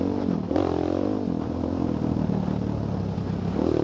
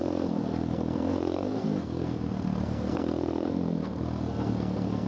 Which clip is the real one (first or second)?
first